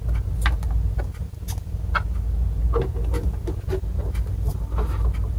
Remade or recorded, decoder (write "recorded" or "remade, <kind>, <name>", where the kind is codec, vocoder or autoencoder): recorded